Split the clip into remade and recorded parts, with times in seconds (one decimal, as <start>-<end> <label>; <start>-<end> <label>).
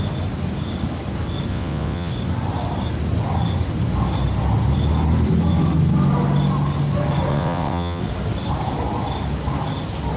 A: 0.0-1.5 recorded; 1.5-2.1 remade; 2.1-7.3 recorded; 7.3-8.0 remade; 8.0-10.2 recorded